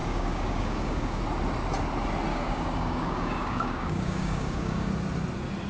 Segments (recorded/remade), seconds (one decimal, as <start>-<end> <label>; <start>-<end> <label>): 0.0-1.2 remade; 1.2-2.3 recorded; 2.3-4.9 remade; 4.9-5.7 recorded